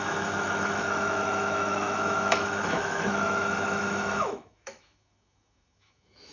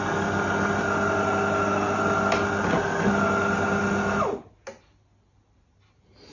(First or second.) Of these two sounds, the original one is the second